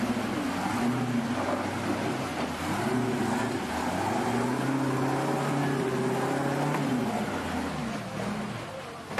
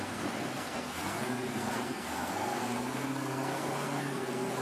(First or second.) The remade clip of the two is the second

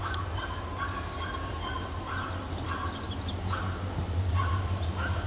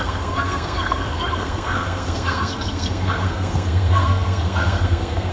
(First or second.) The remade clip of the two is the second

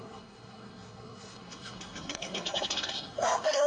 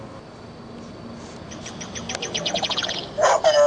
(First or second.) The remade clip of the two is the first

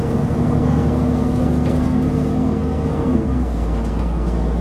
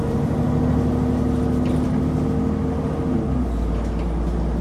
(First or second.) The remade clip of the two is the first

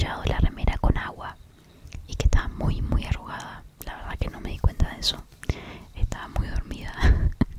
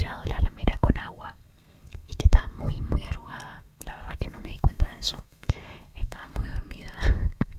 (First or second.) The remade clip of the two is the second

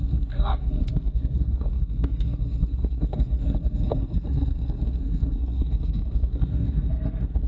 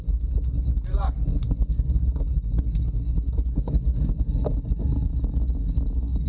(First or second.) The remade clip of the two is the first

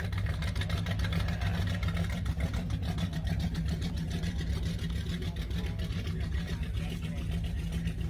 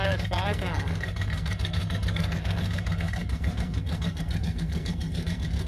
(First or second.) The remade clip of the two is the second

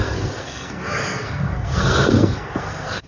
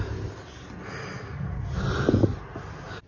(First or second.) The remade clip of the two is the first